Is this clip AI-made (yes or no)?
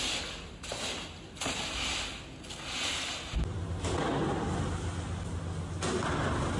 no